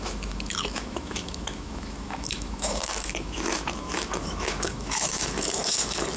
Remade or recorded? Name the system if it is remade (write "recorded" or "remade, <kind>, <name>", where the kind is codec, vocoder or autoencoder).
remade, autoencoder, DAC-VAE